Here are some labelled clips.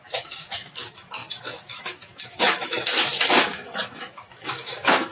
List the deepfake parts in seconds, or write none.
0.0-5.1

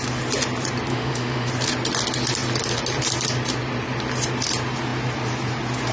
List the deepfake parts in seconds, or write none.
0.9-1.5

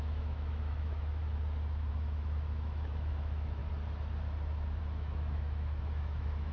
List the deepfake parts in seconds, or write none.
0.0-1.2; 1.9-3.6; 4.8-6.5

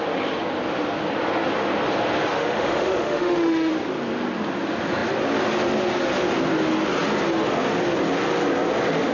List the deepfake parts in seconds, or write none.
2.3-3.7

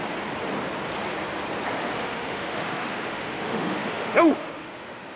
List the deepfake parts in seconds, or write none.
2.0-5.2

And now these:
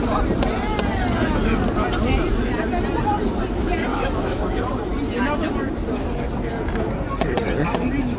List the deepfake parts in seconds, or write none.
3.9-4.4

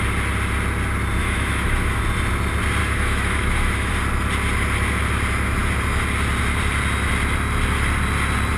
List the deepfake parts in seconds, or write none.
1.2-2.0; 2.8-3.9

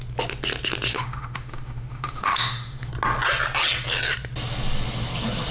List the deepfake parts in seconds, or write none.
0.9-2.9